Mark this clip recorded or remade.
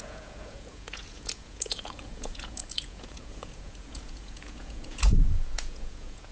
remade